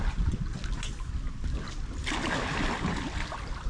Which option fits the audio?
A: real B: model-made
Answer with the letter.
A